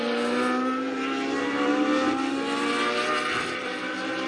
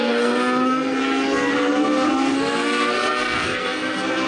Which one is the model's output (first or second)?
second